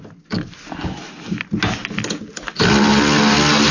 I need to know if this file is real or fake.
real